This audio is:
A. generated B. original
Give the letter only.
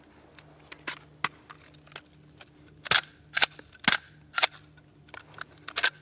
B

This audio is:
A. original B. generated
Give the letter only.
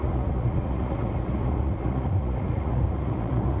B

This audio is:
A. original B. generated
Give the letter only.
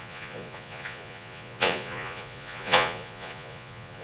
B